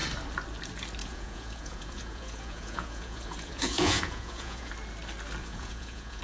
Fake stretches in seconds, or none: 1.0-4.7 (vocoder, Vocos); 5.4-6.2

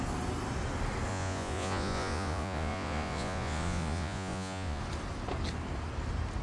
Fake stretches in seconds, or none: 1.1-4.8 (vocoder, Vocos)

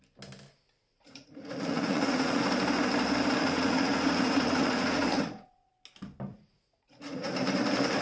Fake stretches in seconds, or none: 1.0-2.4 (vocoder, Vocos); 3.4-5.7; 6.3-7.3

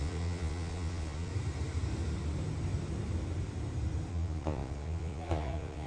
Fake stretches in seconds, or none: 0.0-1.3 (vocoder, Vocos); 4.1-5.9

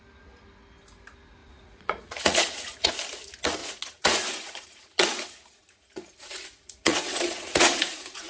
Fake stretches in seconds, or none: 1.4-2.9 (vocoder, Vocos); 3.6-8.3